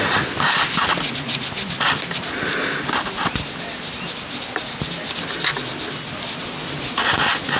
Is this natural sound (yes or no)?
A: yes